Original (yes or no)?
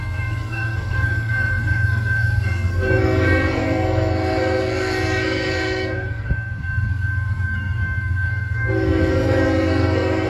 no